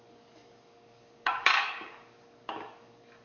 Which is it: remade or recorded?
remade